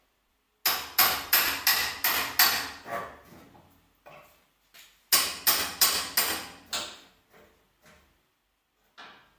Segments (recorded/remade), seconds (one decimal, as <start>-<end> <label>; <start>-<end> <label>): 0.0-9.4 recorded